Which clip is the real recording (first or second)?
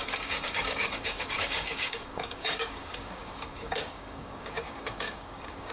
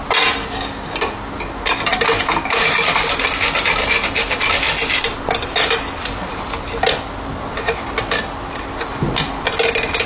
second